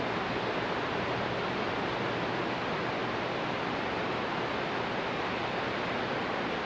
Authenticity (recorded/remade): recorded